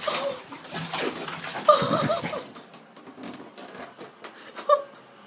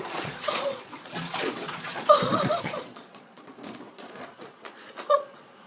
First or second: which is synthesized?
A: second